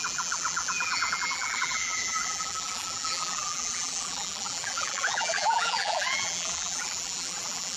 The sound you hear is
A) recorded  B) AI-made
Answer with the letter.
B